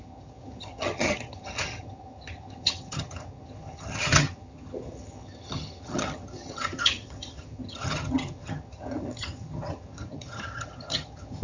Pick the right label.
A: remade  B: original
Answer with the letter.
A